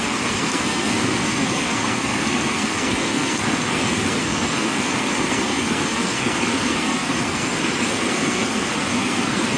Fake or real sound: fake